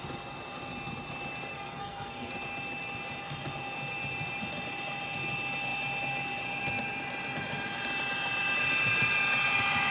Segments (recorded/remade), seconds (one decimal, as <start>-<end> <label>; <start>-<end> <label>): 0.0-1.5 recorded; 1.5-2.3 remade; 2.3-9.9 recorded